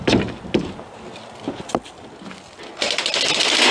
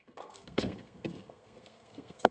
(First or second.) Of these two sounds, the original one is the first